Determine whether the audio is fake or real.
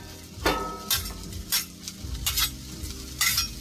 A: real